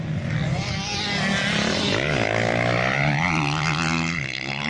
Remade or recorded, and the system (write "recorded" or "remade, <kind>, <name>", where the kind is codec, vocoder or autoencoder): recorded